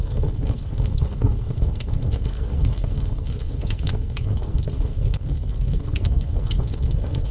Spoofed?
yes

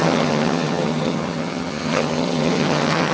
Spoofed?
yes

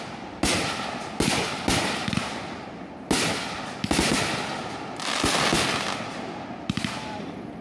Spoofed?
no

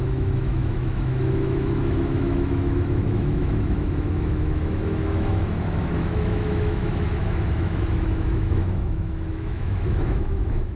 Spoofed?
yes